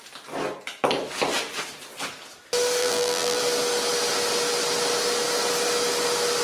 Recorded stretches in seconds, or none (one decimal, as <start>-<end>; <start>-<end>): 0.0-2.8; 3.4-6.4